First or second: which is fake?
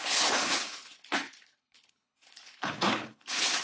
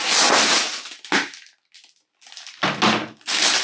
first